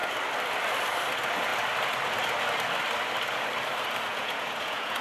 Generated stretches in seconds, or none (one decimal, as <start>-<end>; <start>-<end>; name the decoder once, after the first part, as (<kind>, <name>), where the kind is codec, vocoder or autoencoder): 4.1-5.0 (vocoder, Vocos)